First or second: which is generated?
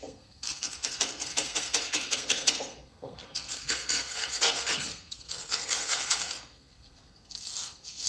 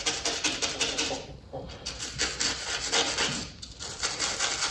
first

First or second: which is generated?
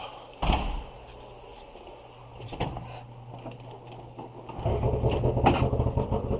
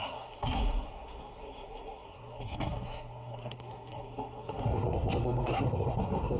second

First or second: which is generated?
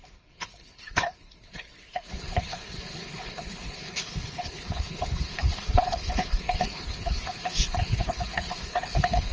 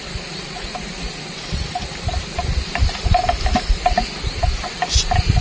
first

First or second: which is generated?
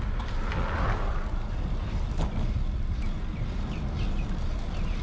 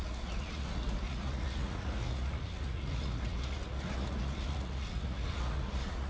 second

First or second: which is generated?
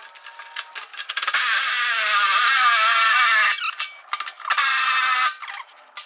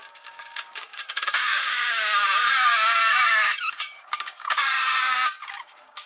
second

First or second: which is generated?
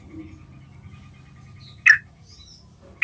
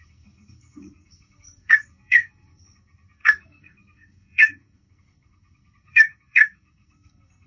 second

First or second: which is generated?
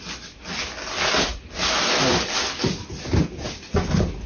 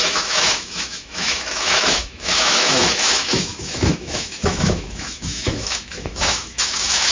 second